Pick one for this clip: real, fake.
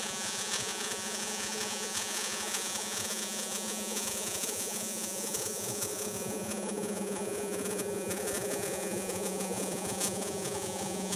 fake